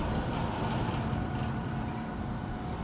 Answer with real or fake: real